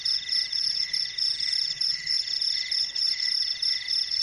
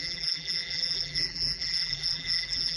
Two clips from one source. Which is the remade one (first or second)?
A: second